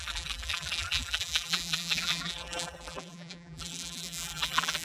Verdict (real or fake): fake